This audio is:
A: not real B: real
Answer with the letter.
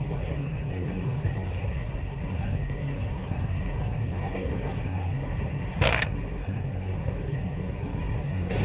A